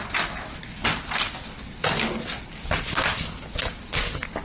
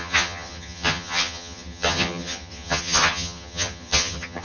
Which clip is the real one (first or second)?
first